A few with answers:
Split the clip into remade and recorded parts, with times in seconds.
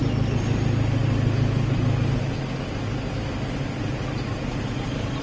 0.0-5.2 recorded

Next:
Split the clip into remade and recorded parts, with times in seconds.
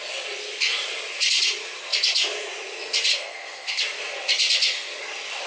0.0-3.1 recorded; 3.1-3.8 remade; 3.8-5.5 recorded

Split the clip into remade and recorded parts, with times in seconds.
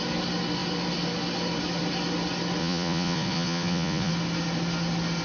0.0-2.6 recorded; 2.6-4.1 remade; 4.1-5.2 recorded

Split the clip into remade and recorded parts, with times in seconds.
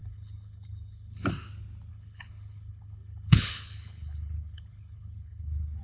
0.0-1.3 remade; 1.3-1.9 recorded; 1.9-5.8 remade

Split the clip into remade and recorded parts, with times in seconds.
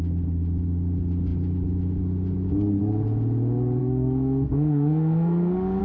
0.0-3.8 recorded; 3.8-5.8 remade